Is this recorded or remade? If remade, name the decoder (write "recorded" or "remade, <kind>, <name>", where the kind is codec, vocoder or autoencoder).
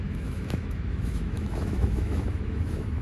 remade, autoencoder, DAC-VAE